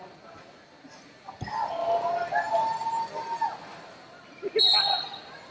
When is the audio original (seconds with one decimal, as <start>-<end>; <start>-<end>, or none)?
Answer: 0.0-5.5